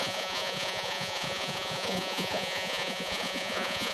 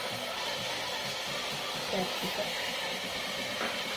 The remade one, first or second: first